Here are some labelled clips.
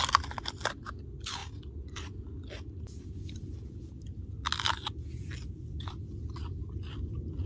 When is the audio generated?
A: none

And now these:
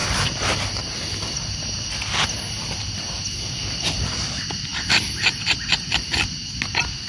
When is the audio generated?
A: none

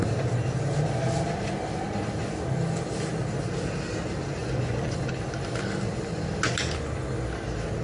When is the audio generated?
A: 4.4-5.1 (vocoder, Vocos)

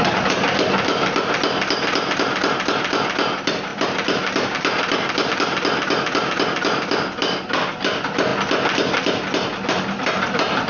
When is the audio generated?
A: none

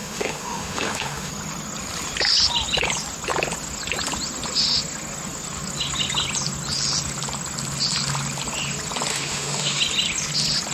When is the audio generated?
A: 0.0-1.3 (autoencoder, DAC-VAE); 9.1-9.8

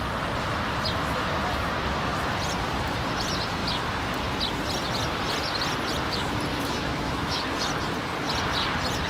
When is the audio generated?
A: 6.5-7.4 (autoencoder, DAC-VAE)

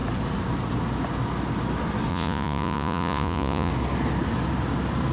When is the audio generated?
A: 2.1-3.7 (vocoder, Vocos)

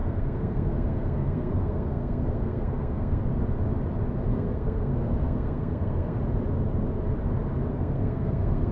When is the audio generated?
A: 0.0-3.3 (codec, SNAC); 4.3-6.2; 7.7-8.7